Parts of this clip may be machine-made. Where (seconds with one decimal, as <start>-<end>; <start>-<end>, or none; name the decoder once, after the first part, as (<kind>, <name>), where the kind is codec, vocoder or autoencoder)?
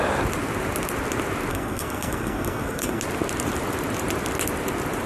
1.5-3.0 (codec, SNAC)